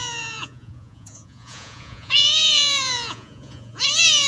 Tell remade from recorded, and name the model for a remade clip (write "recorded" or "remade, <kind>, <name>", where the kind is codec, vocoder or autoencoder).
remade, vocoder, Vocos